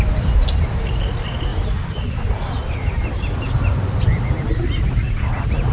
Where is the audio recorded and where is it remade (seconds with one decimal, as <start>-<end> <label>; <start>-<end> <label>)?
0.0-5.7 recorded